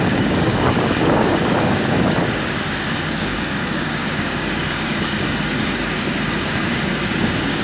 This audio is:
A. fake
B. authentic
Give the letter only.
A